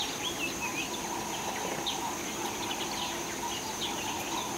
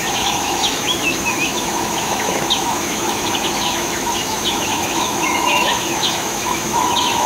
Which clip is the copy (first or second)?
second